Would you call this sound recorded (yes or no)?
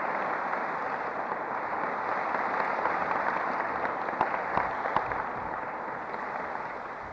yes